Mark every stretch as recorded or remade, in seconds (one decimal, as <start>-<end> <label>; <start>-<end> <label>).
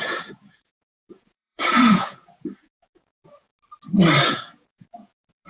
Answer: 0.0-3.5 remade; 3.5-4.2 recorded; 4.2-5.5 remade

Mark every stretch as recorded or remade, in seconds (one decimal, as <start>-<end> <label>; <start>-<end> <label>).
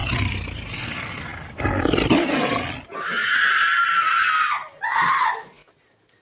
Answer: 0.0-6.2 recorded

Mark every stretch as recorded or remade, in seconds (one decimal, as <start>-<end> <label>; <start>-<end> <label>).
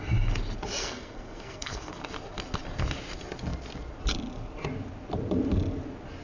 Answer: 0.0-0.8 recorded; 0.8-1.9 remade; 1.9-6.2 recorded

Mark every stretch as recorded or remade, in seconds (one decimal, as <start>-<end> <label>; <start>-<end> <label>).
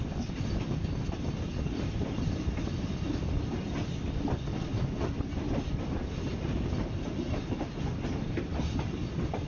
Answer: 0.0-9.5 recorded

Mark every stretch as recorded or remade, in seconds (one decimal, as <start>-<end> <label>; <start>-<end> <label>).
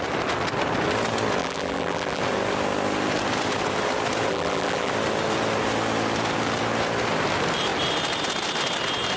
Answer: 0.0-1.4 recorded; 1.4-2.2 remade; 2.2-4.3 recorded; 4.3-4.9 remade; 4.9-9.2 recorded